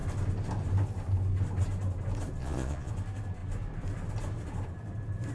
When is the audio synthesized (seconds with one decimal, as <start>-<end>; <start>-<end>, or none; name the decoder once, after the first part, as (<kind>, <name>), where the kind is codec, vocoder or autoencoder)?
2.4-2.9 (vocoder, Vocos)